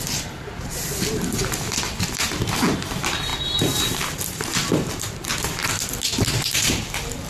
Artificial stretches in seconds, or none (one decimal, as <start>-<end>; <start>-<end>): 0.0-1.4; 2.8-5.6; 6.3-7.3

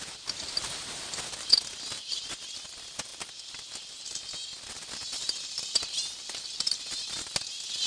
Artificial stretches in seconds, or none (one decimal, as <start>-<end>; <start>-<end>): none

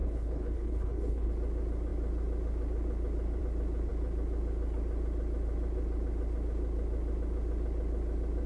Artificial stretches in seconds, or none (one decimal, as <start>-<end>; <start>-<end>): 0.0-1.3

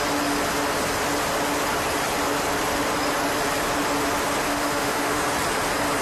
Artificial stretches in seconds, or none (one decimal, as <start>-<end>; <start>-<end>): 4.5-5.2

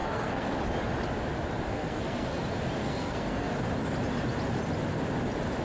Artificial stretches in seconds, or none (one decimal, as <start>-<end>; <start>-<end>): 0.0-0.5; 1.7-2.4; 2.8-3.5